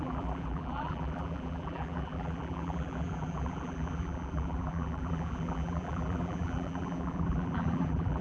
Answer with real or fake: fake